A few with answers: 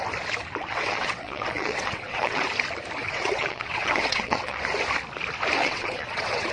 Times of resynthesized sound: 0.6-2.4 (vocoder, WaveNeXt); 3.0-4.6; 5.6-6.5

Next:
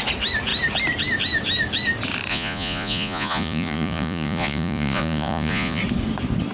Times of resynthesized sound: 2.3-5.8 (vocoder, Vocos)

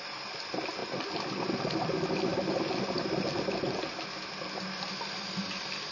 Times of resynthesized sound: none

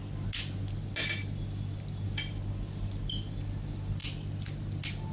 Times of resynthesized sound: none

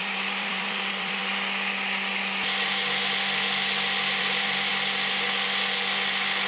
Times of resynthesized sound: 0.0-1.2 (vocoder, BigVGAN v2); 4.2-4.7